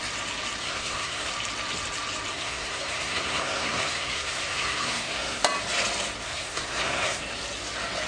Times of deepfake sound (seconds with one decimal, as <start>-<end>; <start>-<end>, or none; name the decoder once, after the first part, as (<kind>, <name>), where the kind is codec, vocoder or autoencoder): 0.6-1.3 (codec, SNAC); 2.3-5.4; 6.3-7.2